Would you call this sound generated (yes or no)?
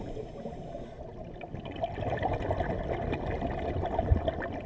no